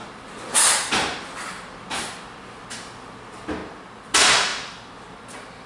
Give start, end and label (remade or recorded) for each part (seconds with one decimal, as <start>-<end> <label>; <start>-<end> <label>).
0.0-5.7 recorded